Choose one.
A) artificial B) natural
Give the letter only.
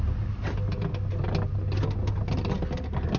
B